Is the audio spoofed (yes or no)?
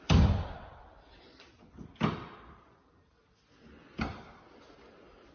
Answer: no